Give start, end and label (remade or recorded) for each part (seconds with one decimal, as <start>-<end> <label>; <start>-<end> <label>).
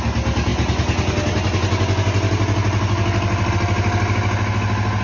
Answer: 0.0-5.0 recorded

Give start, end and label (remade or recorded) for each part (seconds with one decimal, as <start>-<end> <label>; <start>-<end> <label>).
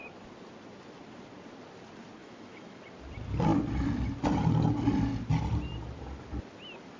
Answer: 0.0-2.2 recorded; 2.2-2.8 remade; 2.8-7.0 recorded